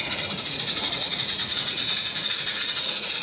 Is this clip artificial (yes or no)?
yes